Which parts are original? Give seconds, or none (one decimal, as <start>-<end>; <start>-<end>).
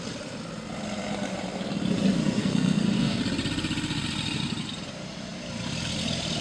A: 0.0-2.4; 3.2-6.4